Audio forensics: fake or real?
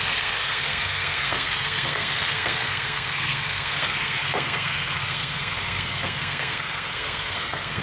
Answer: fake